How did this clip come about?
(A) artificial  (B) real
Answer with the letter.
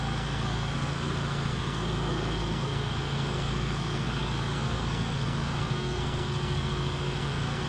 A